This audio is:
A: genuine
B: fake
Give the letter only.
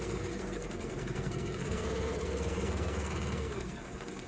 B